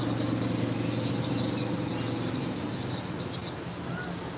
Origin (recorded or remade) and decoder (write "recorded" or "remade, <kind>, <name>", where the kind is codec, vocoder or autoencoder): recorded